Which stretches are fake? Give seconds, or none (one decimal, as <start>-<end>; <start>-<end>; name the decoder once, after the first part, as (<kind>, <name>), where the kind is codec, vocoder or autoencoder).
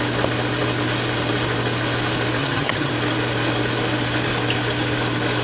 2.4-2.9 (vocoder, HiFi-GAN)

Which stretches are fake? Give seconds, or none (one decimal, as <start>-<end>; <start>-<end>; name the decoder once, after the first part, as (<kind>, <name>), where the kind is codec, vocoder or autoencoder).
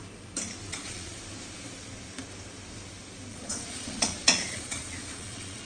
0.7-1.2 (vocoder, Vocos); 3.3-5.6